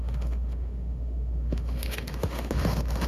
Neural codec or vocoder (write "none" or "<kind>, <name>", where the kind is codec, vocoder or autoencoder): autoencoder, DAC-VAE